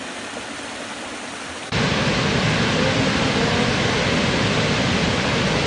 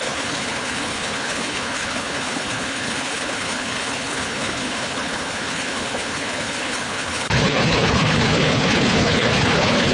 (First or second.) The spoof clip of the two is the second